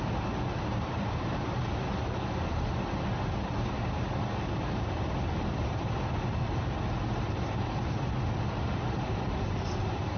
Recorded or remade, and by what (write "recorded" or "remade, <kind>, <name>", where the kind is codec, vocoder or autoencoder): recorded